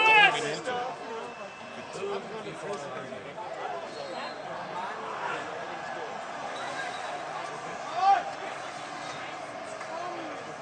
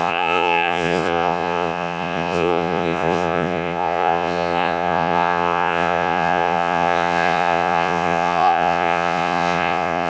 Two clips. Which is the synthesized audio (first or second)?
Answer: second